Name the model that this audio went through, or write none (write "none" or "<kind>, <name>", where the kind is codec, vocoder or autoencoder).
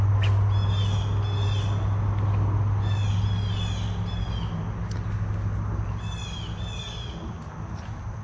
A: none